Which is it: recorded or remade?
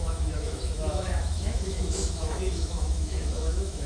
remade